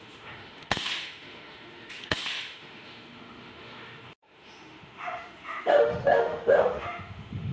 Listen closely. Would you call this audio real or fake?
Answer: fake